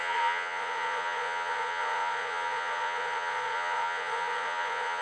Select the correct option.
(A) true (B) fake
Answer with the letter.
B